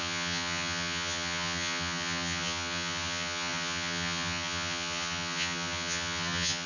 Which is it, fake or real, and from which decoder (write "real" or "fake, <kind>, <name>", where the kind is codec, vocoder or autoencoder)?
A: fake, vocoder, HiFi-GAN